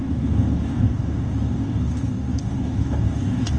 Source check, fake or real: fake